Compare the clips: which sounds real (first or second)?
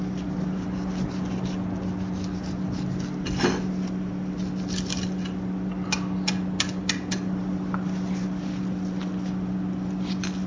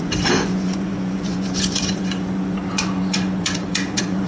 first